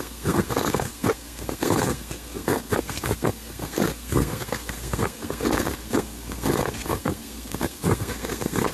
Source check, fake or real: fake